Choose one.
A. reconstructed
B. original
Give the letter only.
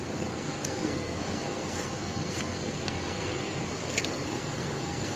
A